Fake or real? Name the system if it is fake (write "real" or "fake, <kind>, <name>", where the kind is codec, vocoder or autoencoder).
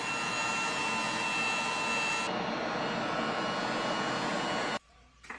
real